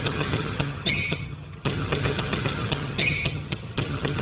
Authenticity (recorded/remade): remade